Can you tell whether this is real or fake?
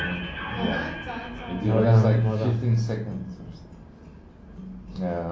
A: real